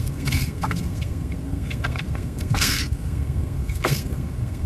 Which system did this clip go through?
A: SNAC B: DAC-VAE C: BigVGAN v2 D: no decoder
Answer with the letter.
A